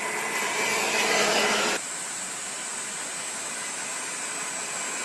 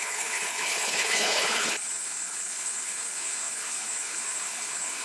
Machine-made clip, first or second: second